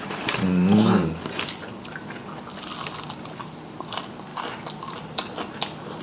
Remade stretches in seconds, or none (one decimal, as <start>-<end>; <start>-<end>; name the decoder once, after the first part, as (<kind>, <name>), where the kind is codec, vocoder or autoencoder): none